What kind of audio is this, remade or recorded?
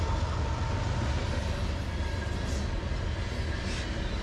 recorded